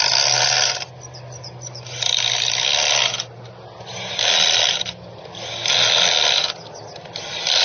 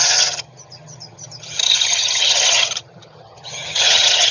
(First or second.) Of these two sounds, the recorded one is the first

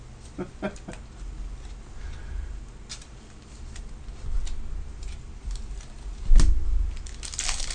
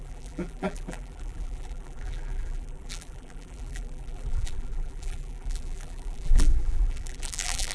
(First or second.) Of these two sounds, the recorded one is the first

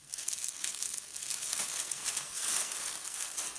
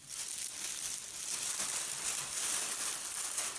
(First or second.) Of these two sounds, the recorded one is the second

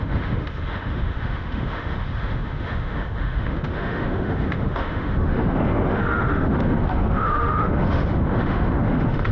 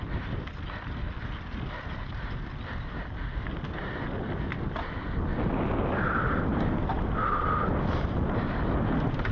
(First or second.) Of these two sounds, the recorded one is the second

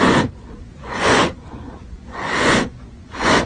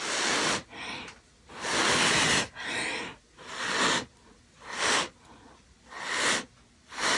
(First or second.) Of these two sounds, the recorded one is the second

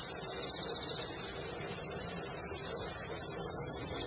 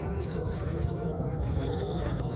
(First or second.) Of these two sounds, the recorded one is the first